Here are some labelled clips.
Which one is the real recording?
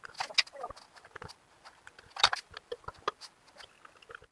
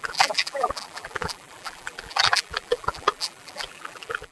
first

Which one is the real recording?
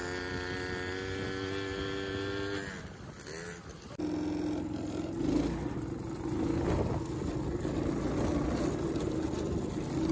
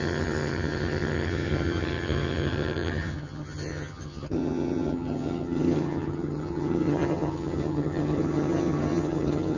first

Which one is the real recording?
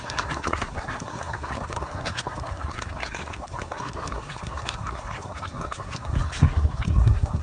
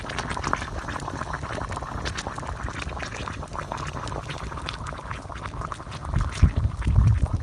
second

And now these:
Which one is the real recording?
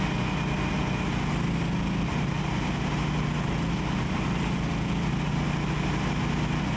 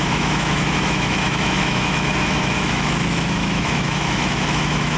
first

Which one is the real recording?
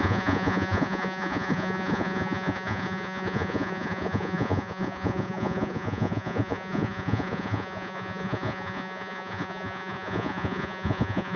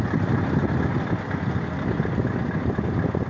second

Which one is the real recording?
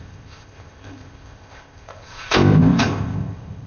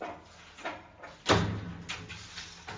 second